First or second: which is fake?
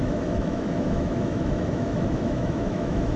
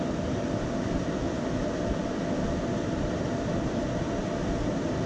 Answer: first